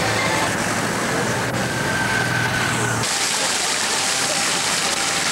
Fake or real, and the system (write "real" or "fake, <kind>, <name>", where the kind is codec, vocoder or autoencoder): real